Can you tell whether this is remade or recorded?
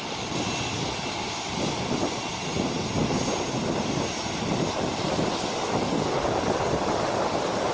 recorded